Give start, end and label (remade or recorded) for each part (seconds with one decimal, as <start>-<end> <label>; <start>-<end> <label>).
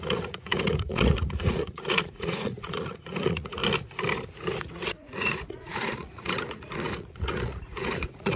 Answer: 0.0-3.6 remade; 3.6-4.6 recorded; 4.6-8.4 remade